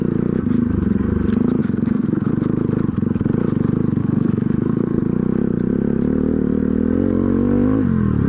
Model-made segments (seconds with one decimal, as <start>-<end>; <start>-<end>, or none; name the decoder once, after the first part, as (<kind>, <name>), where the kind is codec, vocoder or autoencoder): 1.6-2.3 (codec, SNAC); 4.0-5.0

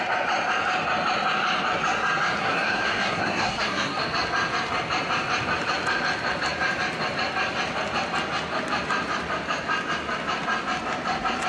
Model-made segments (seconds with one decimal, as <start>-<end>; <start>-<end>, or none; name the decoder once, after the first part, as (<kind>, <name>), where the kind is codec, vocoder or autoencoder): 2.4-4.0 (codec, SNAC)

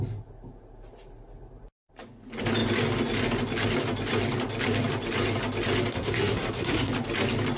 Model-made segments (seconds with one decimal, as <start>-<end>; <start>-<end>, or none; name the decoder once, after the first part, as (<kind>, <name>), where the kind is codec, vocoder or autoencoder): 5.9-6.9 (codec, SNAC)

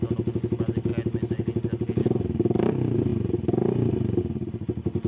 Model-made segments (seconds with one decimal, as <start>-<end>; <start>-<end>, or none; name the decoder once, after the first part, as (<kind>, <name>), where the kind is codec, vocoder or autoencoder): none

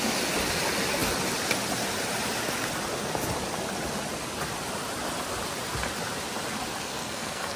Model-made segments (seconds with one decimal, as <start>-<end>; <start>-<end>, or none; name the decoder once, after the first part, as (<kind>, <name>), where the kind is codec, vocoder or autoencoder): 6.8-7.6 (codec, SNAC)